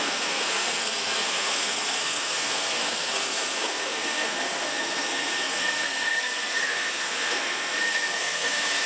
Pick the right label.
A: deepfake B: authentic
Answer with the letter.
A